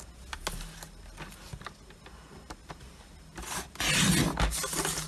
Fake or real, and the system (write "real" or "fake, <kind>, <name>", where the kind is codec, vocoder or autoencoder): real